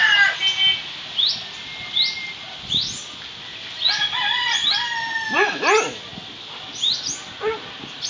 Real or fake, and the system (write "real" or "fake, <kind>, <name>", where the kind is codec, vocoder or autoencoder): real